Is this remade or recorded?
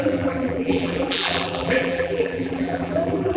remade